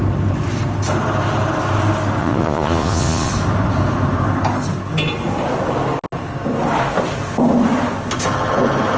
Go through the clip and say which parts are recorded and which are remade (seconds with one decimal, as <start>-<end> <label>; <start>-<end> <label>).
0.0-2.2 recorded; 2.2-3.3 remade; 3.3-9.0 recorded